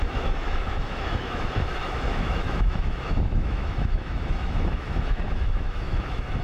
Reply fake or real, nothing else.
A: fake